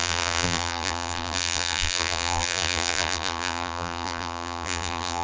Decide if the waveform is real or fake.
fake